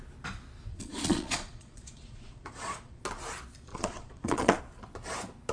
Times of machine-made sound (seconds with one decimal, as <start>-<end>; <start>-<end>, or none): 0.7-3.0; 3.7-4.6